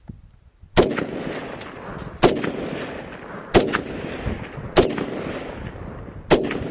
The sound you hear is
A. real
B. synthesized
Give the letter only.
A